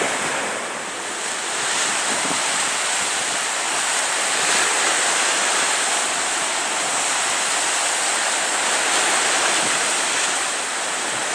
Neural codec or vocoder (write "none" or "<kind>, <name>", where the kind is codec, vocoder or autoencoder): none